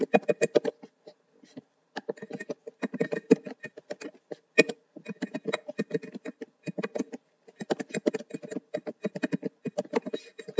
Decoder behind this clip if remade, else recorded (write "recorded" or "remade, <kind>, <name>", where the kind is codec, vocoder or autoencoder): recorded